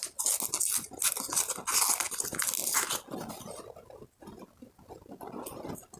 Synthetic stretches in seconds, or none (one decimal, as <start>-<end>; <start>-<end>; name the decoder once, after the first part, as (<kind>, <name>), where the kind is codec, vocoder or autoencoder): none